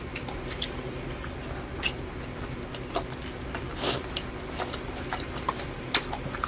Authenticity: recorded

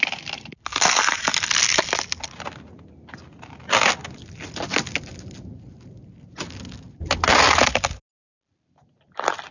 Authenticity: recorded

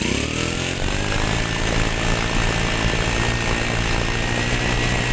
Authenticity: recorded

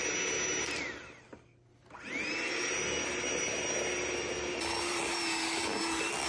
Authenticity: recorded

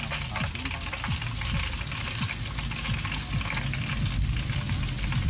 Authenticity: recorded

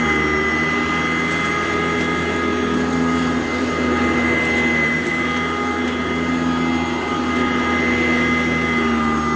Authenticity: recorded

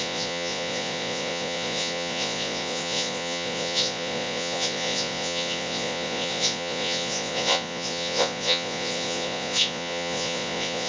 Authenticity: remade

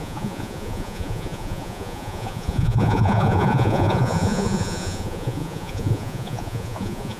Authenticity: remade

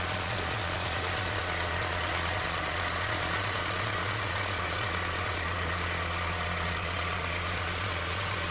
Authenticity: remade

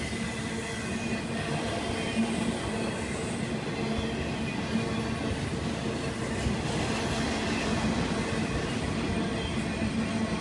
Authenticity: recorded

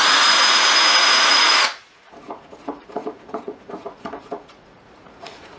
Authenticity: remade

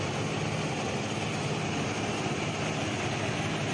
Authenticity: recorded